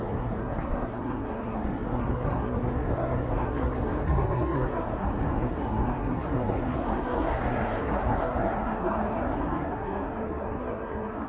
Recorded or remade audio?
remade